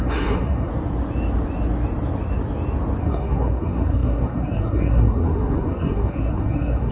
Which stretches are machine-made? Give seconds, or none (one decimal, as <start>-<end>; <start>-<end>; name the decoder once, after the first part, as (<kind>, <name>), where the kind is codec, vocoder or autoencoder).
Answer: 0.0-0.7 (codec, SNAC); 3.0-6.9